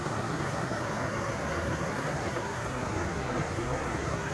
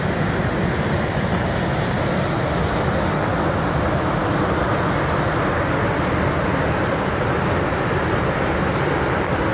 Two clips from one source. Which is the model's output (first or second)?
first